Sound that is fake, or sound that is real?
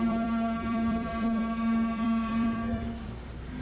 fake